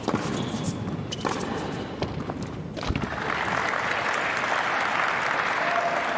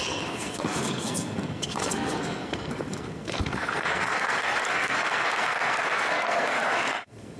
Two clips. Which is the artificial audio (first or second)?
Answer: second